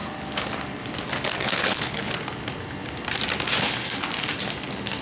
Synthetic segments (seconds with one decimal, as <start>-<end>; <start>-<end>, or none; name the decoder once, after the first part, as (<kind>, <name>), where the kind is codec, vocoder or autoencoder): 1.3-2.1 (codec, HILCodec)